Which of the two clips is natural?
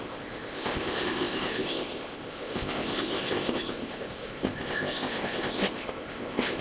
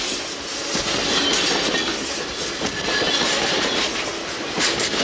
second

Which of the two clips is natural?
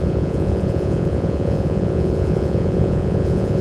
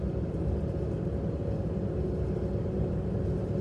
second